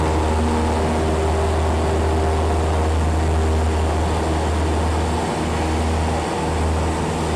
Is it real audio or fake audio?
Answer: real